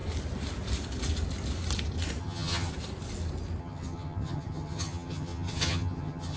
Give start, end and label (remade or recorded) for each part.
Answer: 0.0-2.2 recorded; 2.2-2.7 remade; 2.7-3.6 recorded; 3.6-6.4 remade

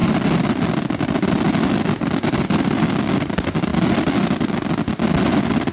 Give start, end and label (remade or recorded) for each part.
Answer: 0.0-5.7 recorded